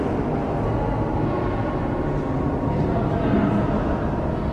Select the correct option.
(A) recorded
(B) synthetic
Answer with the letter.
A